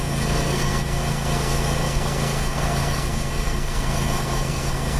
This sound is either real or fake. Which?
fake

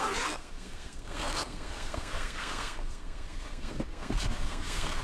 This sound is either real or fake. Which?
fake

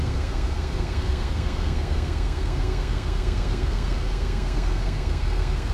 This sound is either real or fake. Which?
fake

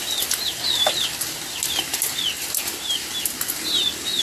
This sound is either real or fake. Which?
real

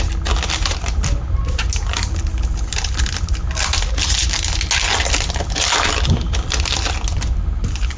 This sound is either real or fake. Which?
real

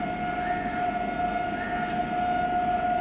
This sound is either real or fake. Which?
real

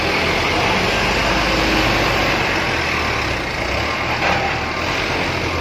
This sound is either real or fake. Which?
real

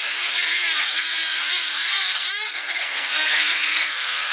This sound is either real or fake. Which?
fake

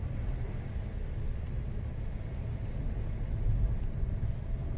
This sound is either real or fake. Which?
real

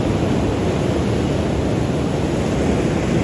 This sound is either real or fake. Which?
real